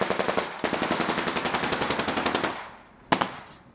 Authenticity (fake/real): real